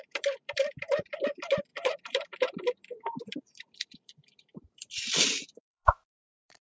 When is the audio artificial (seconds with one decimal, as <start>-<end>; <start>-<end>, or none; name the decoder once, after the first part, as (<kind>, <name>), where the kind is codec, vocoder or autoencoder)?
0.0-6.7 (vocoder, BigVGAN v2)